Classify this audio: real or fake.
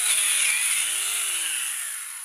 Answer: real